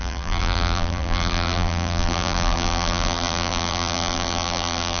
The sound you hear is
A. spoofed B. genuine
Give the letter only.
A